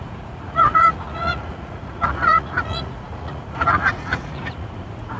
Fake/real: fake